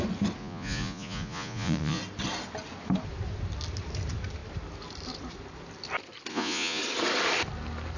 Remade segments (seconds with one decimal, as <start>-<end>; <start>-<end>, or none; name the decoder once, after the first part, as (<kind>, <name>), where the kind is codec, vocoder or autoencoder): 0.4-2.0 (vocoder, Vocos); 6.3-6.8

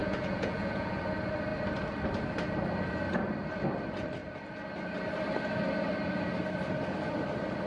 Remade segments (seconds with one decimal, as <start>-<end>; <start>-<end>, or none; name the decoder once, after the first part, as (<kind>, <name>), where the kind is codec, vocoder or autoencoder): 0.0-1.0 (vocoder, Vocos)

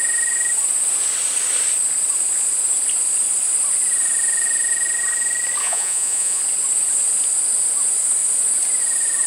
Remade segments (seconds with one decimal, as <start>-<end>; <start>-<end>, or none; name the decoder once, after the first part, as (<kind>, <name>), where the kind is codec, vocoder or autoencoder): 5.6-6.4 (vocoder, Vocos)

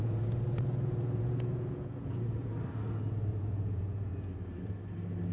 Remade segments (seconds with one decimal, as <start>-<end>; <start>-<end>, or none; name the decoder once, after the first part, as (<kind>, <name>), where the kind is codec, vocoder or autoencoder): 0.0-2.5 (vocoder, Vocos); 3.3-4.3

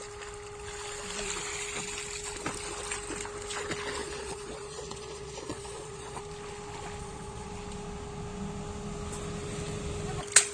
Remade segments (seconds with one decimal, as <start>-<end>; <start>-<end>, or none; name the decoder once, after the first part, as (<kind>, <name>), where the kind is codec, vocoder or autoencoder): 4.0-6.2 (vocoder, Vocos); 7.0-7.5

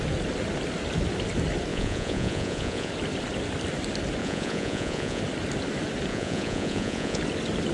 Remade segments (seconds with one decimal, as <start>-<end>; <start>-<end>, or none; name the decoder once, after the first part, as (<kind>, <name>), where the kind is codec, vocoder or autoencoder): 1.7-2.9 (vocoder, Vocos); 4.2-5.2; 6.1-7.2